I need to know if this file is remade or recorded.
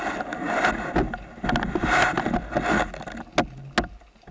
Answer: recorded